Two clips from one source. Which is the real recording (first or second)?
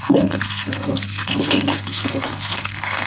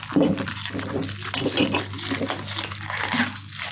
second